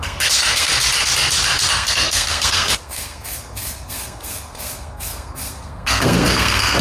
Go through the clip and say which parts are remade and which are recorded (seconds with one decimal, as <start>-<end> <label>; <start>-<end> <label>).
0.0-0.7 remade; 0.7-1.7 recorded; 1.7-6.8 remade